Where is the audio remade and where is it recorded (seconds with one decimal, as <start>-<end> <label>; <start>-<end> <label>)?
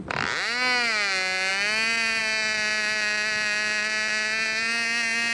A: 0.0-5.3 recorded